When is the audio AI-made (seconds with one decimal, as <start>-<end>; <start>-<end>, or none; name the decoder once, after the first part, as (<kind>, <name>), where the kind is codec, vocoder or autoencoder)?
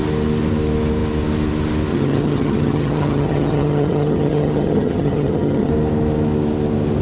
1.9-5.7 (vocoder, HiFi-GAN)